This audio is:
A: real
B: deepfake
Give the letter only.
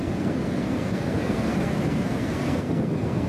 B